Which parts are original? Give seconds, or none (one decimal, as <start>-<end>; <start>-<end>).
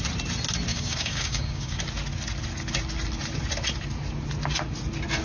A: 0.0-0.7; 1.8-5.2